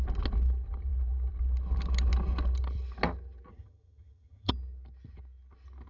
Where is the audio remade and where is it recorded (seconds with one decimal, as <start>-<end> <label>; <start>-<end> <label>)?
0.0-3.5 recorded; 3.5-4.5 remade; 4.5-5.9 recorded